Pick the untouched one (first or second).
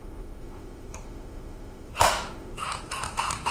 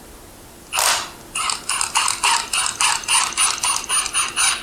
second